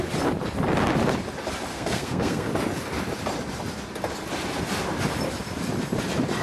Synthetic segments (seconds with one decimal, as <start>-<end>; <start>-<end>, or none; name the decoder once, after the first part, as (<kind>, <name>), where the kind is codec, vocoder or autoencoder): 1.7-2.5 (codec, SNAC)